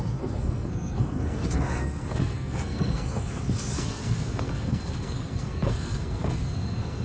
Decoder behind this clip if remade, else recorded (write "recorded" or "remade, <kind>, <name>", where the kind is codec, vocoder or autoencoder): remade, codec, SNAC